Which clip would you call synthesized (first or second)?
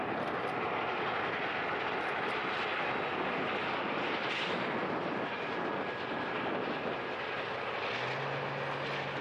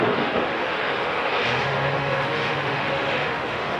second